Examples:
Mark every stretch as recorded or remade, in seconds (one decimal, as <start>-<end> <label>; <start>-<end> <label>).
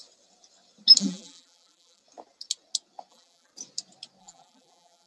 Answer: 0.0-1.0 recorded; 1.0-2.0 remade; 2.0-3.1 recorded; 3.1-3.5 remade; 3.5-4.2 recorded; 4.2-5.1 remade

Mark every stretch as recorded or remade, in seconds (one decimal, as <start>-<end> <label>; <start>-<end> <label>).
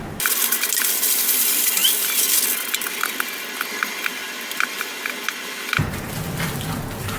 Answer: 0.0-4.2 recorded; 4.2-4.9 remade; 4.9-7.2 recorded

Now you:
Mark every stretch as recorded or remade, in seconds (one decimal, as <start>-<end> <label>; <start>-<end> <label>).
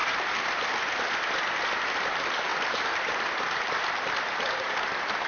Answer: 0.0-5.3 recorded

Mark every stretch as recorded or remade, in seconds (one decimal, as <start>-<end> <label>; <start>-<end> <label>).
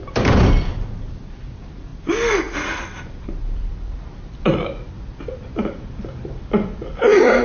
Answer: 0.0-7.4 remade